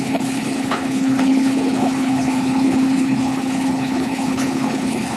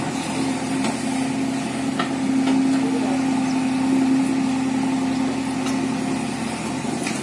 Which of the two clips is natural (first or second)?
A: second